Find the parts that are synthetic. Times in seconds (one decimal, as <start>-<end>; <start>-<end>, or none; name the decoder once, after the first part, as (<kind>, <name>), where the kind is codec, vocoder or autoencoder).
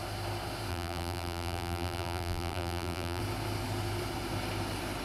0.7-3.2 (vocoder, BigVGAN v2)